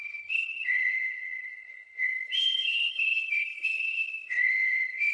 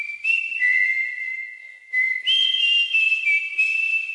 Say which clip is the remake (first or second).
first